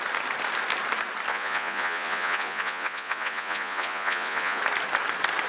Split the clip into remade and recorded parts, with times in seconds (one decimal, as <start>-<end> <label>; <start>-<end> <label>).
0.0-1.3 recorded; 1.3-4.6 remade; 4.6-5.5 recorded